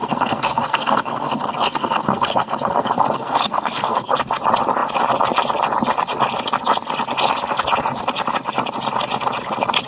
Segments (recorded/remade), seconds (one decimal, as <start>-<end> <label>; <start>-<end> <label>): 0.0-4.2 remade; 4.2-9.9 recorded